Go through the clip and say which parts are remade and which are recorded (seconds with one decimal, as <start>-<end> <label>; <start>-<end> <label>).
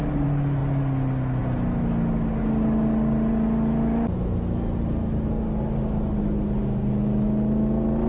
0.0-8.1 recorded